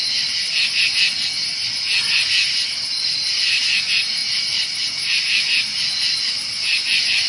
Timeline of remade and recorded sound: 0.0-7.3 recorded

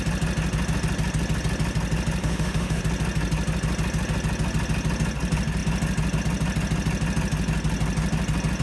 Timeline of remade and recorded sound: 0.0-2.2 recorded; 2.2-2.8 remade; 2.8-8.6 recorded

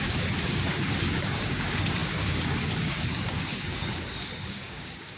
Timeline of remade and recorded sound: 0.0-5.2 remade

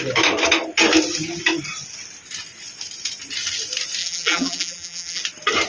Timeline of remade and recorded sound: 0.0-4.0 recorded; 4.0-5.2 remade; 5.2-5.7 recorded

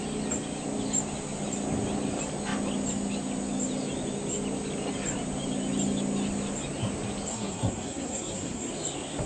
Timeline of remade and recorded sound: 0.0-7.3 recorded; 7.3-8.7 remade; 8.7-9.3 recorded

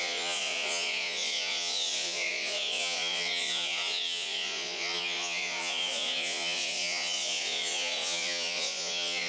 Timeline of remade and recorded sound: 0.0-9.3 remade

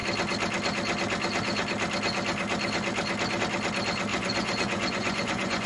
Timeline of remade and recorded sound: 0.0-4.1 recorded; 4.1-5.7 remade